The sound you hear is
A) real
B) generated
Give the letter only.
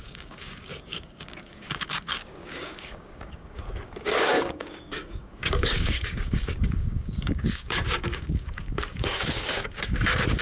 B